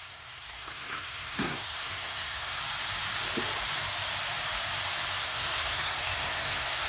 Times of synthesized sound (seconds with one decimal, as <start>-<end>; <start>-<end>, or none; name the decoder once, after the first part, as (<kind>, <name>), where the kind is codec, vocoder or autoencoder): 0.0-2.6 (codec, SNAC); 5.2-6.9